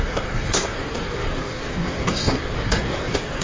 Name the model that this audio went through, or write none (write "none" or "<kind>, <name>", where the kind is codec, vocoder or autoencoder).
codec, SNAC